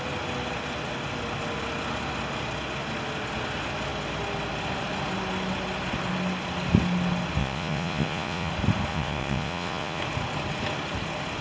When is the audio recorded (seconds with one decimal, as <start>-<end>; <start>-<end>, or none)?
0.0-7.4; 8.5-8.9; 10.0-11.4